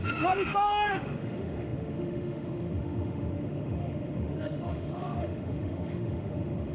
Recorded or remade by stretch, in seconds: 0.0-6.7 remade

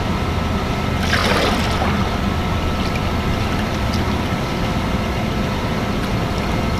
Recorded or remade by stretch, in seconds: 0.0-6.8 recorded